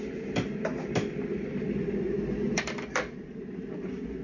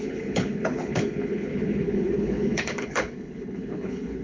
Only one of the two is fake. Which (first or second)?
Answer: second